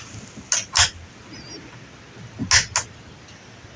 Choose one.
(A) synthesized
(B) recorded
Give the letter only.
B